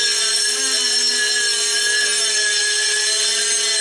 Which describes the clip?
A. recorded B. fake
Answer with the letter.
A